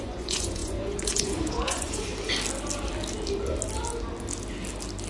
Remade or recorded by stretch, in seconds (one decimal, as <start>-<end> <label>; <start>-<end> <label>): 0.0-2.1 remade; 2.1-5.1 recorded